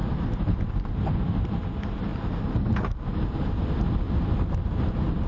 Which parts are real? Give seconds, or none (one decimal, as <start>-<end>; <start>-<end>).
0.0-5.3

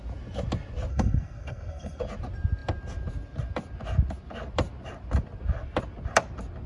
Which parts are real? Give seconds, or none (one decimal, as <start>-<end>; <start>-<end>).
0.0-0.9; 2.0-6.7

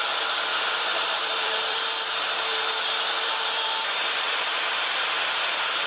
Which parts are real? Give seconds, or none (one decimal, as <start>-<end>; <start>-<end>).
0.0-0.5; 4.0-4.5

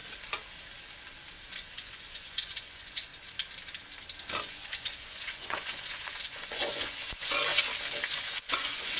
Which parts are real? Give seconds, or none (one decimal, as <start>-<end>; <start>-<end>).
0.0-1.5; 3.1-4.4; 7.5-8.1

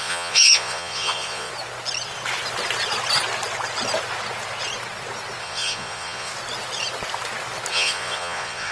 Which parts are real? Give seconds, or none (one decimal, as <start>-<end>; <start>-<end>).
1.5-5.4; 6.3-7.7

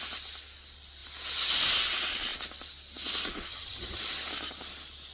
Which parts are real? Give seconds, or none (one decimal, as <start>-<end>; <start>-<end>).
0.0-3.5; 4.0-5.1

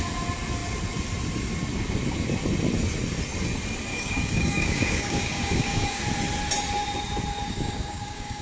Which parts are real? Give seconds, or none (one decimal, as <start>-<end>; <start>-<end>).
0.0-3.9; 6.0-7.4